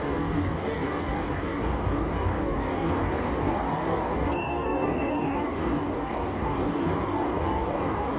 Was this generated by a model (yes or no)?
yes